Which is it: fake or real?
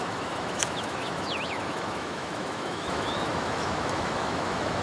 fake